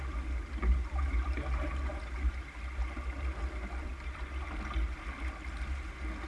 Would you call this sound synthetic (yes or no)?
no